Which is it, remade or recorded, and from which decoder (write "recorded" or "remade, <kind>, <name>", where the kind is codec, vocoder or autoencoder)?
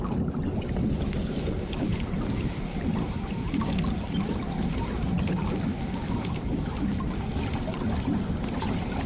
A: recorded